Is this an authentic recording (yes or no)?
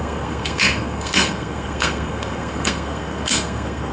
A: no